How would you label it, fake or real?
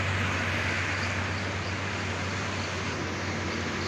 real